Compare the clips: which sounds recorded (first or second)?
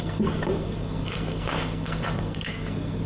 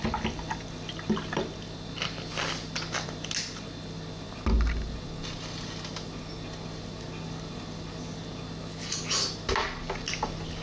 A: second